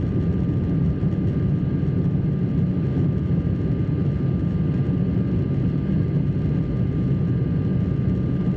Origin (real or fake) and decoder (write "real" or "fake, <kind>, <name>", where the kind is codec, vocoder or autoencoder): real